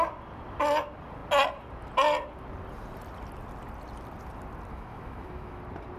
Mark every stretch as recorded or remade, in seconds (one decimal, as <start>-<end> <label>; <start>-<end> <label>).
0.0-4.7 recorded; 4.7-5.6 remade; 5.6-6.0 recorded